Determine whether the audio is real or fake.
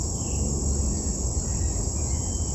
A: real